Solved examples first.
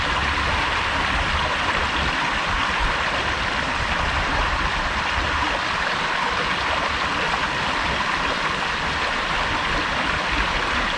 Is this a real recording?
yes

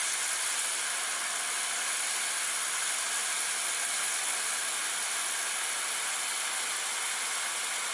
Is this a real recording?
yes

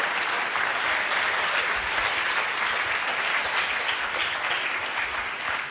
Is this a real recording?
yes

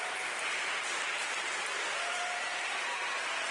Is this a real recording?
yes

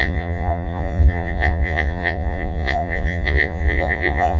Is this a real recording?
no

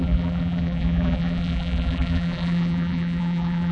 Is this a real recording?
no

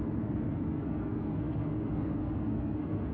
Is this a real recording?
no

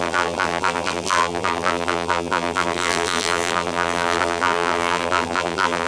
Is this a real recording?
no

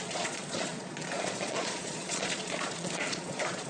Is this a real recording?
no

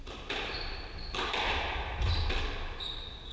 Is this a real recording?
yes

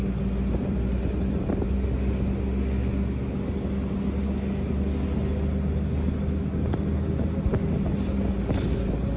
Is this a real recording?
yes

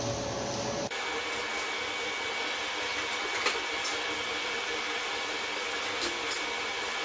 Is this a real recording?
yes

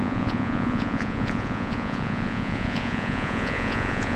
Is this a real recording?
no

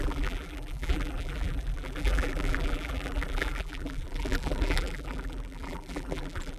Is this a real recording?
no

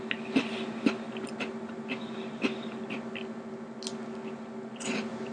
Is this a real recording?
yes